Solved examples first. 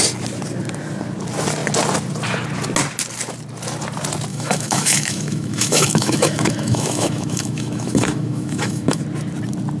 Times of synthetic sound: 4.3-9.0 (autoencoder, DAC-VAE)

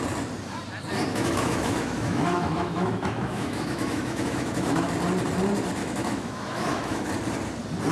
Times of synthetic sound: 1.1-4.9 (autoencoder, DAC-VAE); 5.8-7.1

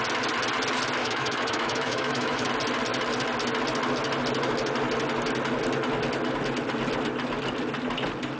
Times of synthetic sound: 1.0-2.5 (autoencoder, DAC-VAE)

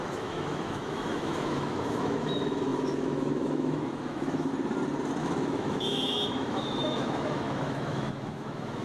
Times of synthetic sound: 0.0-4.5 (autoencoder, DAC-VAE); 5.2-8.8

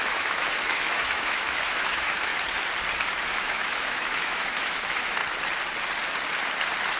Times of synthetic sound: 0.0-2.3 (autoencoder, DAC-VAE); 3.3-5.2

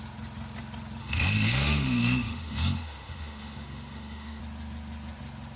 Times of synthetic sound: 1.0-4.4 (autoencoder, DAC-VAE)

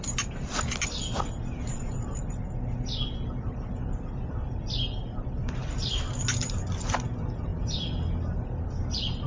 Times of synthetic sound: none